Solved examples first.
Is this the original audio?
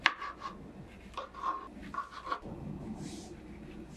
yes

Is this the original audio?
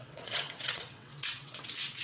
no